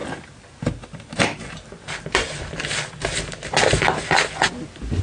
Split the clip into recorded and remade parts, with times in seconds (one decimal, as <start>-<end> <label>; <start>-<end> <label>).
0.0-1.4 remade; 1.4-5.0 recorded